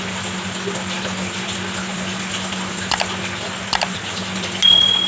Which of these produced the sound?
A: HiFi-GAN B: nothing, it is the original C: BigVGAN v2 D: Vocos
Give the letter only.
B